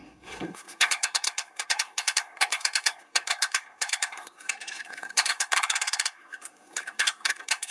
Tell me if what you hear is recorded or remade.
remade